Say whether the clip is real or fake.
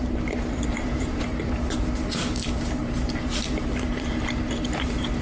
fake